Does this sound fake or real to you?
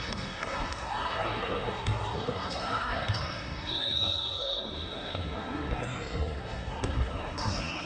fake